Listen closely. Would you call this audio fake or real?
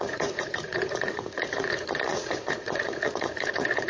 fake